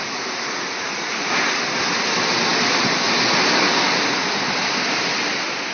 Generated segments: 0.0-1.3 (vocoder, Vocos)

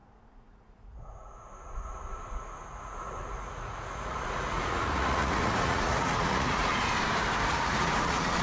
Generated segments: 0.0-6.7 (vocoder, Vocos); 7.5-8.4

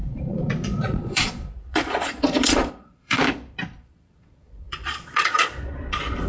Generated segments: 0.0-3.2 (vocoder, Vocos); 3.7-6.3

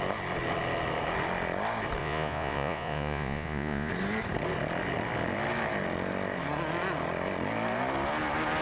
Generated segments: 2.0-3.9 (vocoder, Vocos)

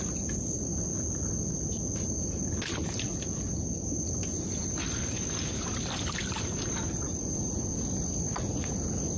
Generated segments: none

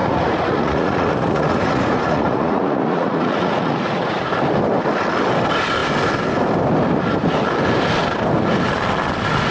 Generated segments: 0.0-4.3 (vocoder, Vocos)

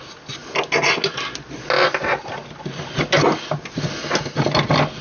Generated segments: none